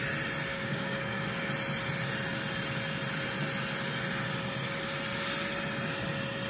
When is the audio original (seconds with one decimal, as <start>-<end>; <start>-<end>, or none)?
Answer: 0.0-0.5; 1.5-6.5